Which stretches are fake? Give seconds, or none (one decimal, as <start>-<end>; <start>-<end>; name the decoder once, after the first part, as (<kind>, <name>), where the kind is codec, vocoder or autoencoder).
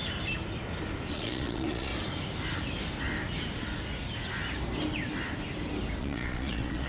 1.1-1.9 (vocoder, Vocos); 6.0-6.9